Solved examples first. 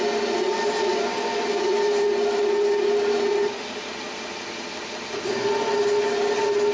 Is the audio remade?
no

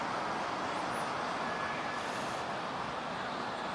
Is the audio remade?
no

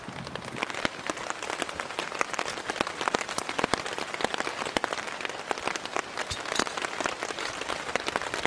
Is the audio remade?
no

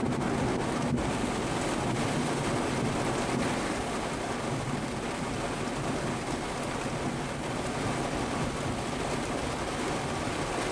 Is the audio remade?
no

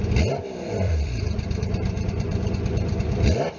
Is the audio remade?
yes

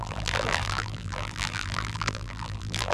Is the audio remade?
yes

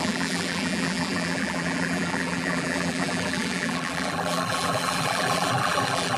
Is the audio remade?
yes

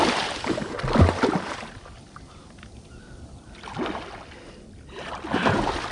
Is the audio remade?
no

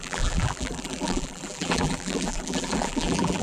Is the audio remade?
yes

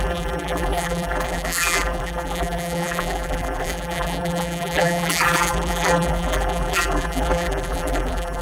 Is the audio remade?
yes